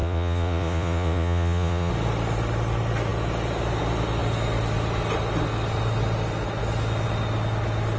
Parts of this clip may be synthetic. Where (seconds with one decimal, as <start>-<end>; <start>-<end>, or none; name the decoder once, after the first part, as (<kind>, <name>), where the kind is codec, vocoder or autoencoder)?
0.0-1.9 (vocoder, Vocos)